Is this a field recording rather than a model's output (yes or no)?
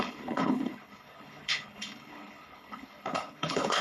no